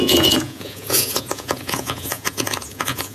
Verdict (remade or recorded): remade